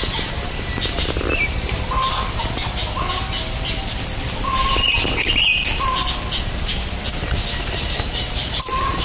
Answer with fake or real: real